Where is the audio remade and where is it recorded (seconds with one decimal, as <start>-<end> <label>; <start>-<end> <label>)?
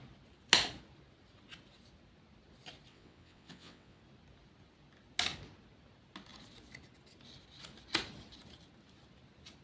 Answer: 0.0-2.9 recorded; 2.9-4.0 remade; 4.0-9.6 recorded